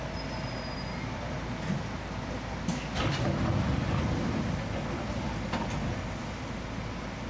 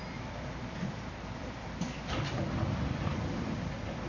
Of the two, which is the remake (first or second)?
second